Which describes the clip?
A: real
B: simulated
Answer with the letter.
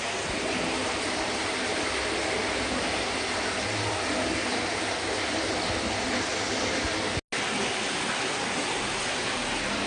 A